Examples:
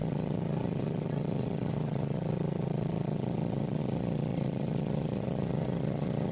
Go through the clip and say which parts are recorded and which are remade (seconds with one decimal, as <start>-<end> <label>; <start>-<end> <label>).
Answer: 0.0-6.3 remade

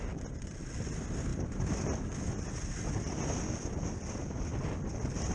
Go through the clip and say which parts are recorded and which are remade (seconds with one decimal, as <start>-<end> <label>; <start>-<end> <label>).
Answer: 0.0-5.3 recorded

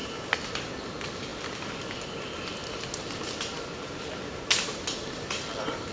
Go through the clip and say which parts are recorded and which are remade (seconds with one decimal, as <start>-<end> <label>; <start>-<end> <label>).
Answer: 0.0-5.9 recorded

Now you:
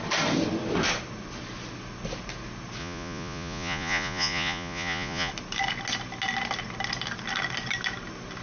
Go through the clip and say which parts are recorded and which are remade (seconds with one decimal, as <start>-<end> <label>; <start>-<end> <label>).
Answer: 0.0-2.8 recorded; 2.8-5.3 remade; 5.3-8.4 recorded